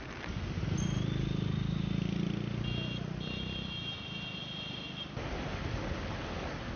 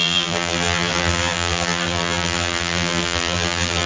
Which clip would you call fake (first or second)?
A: second